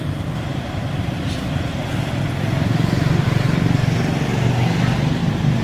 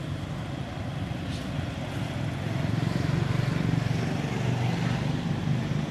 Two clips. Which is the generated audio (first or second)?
first